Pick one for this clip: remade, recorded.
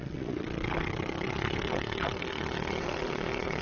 remade